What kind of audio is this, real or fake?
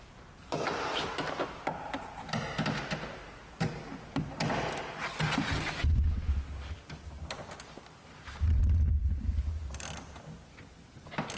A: real